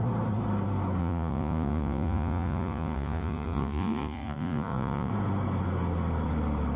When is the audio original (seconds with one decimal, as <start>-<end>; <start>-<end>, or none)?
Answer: 0.0-1.0; 5.1-6.8